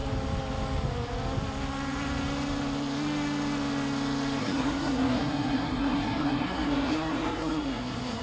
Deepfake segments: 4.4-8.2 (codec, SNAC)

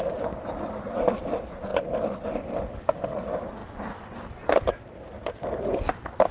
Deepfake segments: none

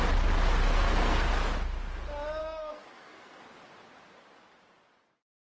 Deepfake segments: 0.6-1.3 (codec, SNAC); 2.4-3.4

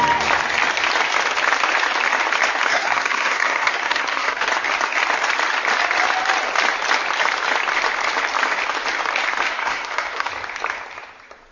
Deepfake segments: 2.7-4.5 (codec, SNAC); 9.6-10.3

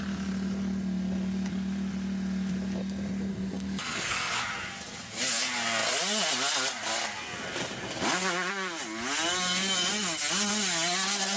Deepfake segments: 3.3-4.4 (codec, SNAC)

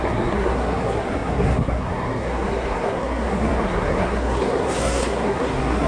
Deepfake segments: 0.0-5.9 (codec, SNAC)

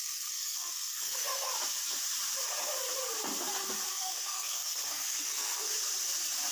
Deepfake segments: 0.0-1.5 (codec, SNAC); 3.9-5.7

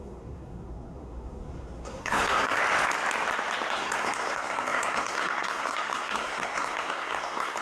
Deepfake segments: 0.0-2.6 (codec, SNAC); 3.7-7.6